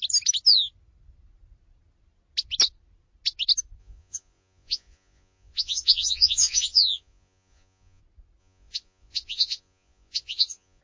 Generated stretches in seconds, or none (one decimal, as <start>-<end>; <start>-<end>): 3.8-8.0; 8.4-10.8